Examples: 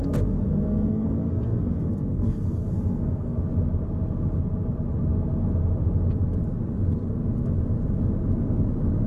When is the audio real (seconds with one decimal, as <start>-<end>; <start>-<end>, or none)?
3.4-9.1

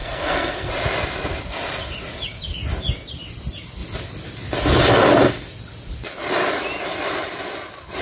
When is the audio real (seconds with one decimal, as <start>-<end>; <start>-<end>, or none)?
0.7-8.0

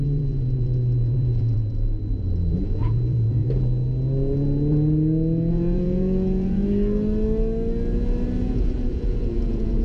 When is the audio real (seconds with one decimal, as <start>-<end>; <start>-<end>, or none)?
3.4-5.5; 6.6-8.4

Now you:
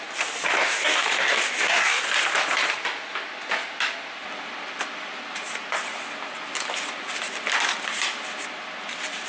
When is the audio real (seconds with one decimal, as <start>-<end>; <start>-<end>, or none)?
0.0-0.6; 2.0-9.3

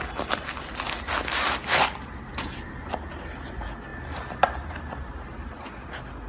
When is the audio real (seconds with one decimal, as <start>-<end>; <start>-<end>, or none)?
0.0-6.3